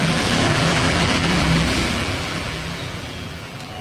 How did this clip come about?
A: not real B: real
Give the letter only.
A